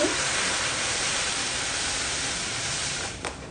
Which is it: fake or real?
fake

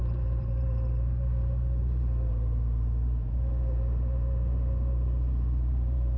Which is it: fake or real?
fake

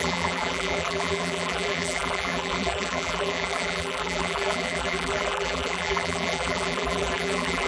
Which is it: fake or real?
fake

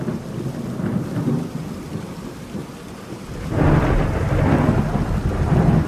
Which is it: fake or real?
fake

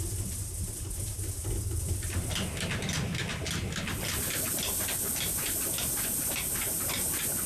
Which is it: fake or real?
real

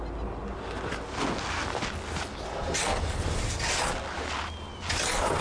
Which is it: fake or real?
real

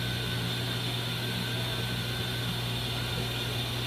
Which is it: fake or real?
real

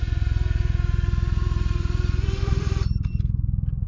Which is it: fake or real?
fake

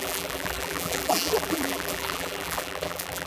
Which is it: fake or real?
fake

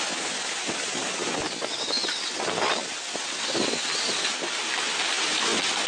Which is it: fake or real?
real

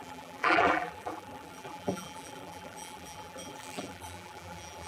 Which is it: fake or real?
fake